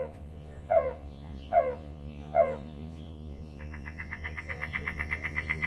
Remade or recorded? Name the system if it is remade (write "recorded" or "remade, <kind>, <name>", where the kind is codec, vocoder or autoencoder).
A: remade, vocoder, Vocos